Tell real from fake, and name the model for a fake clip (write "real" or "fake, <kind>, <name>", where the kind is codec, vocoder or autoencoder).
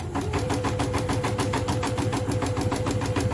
real